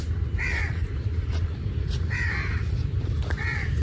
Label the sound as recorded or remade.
remade